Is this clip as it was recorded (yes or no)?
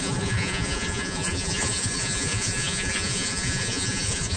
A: no